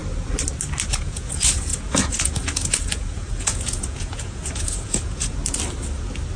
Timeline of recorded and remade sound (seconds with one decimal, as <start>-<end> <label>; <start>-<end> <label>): 0.0-0.9 recorded; 0.9-5.4 remade; 5.4-6.4 recorded